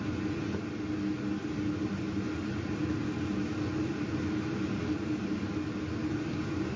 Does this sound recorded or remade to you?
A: recorded